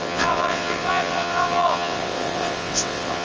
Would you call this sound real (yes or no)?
no